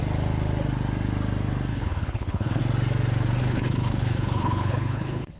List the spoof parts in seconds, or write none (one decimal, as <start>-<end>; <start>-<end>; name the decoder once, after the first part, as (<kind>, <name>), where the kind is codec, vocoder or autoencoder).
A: 1.7-2.6 (codec, HILCodec); 3.4-5.4